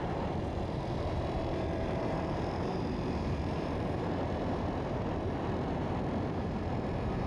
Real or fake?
fake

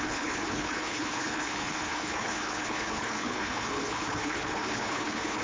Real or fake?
fake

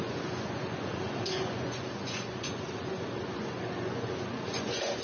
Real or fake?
fake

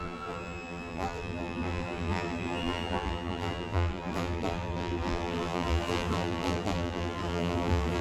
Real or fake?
fake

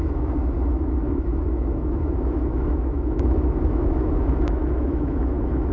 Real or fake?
fake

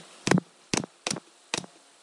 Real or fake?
real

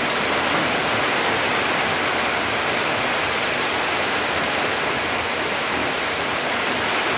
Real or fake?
real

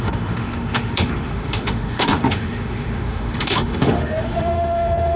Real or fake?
fake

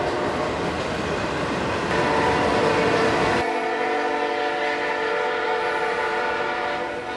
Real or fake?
real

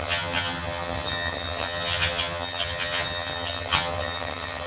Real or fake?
fake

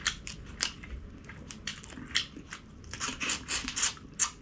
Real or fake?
real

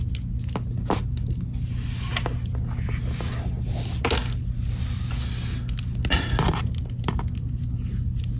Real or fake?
real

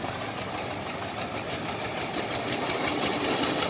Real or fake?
real